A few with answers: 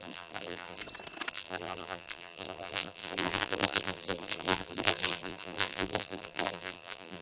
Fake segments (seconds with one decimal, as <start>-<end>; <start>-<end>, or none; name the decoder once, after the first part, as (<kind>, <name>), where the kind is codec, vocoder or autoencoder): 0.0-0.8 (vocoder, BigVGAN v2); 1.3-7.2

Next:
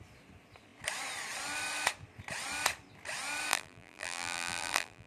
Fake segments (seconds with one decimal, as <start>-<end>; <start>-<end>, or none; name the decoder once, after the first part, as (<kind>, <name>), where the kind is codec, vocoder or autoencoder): 3.5-5.1 (vocoder, BigVGAN v2)

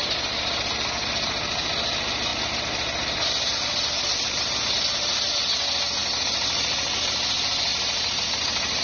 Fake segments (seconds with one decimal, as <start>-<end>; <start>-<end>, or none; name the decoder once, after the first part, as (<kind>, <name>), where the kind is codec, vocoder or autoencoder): 0.0-0.6 (vocoder, BigVGAN v2); 7.7-8.8

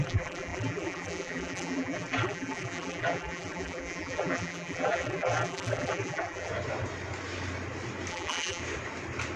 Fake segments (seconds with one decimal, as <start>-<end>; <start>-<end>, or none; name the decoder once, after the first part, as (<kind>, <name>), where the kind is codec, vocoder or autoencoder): 0.0-6.5 (vocoder, BigVGAN v2); 8.1-8.6